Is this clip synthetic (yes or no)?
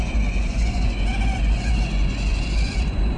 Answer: yes